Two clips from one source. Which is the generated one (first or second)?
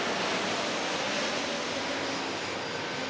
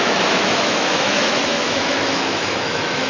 second